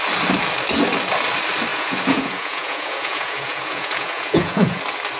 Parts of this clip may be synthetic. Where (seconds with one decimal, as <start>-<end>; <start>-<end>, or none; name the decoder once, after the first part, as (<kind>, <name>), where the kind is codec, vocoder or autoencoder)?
1.7-4.8 (vocoder, Vocos)